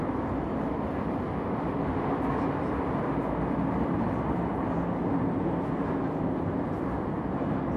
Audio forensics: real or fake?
real